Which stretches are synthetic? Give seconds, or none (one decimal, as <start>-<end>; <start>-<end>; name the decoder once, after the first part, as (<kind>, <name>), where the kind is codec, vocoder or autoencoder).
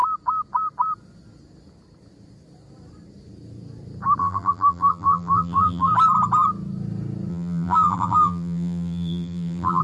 4.2-5.9 (vocoder, BigVGAN v2); 7.3-9.8